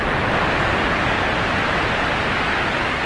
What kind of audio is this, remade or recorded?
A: recorded